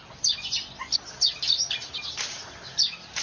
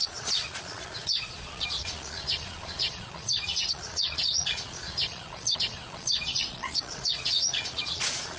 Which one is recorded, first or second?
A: first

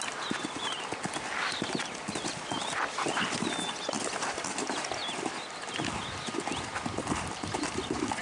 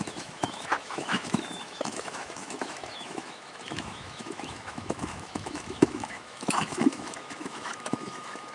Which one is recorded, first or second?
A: first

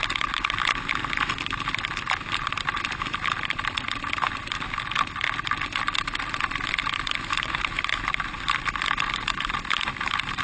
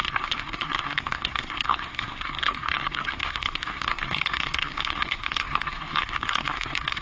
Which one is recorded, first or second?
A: first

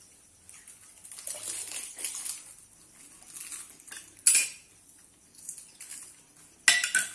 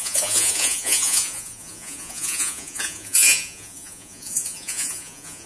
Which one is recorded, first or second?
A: first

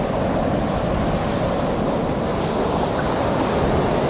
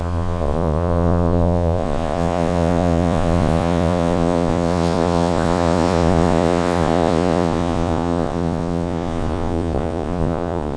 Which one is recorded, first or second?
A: first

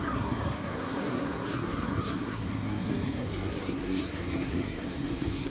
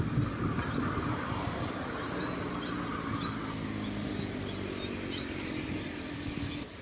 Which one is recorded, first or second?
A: second